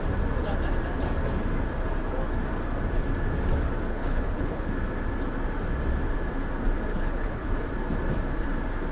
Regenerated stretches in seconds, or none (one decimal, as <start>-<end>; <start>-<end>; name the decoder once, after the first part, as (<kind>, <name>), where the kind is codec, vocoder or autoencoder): 3.9-4.7 (codec, HILCodec); 6.9-7.5